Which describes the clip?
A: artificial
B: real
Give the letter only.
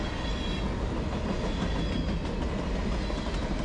B